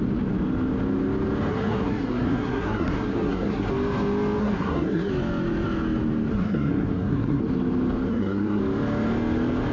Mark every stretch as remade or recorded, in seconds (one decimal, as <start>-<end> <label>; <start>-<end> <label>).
0.0-1.5 recorded; 1.5-3.7 remade; 3.7-4.4 recorded; 4.4-5.1 remade; 5.1-6.3 recorded; 6.3-7.4 remade; 7.4-8.1 recorded; 8.1-8.6 remade; 8.6-9.7 recorded